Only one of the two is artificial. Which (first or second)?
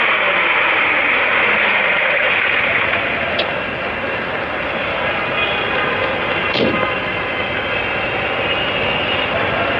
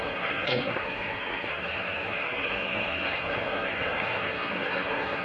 second